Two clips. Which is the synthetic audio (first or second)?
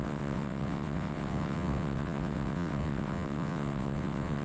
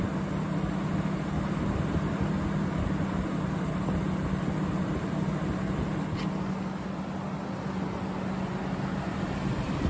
first